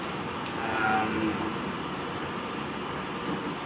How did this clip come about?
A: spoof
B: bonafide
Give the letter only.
B